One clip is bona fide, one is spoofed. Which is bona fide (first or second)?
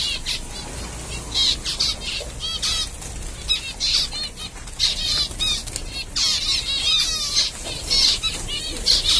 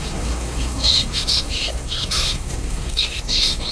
first